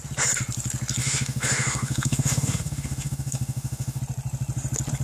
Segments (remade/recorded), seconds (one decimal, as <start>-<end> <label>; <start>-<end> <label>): 0.0-1.0 recorded; 1.0-4.0 remade; 4.0-5.0 recorded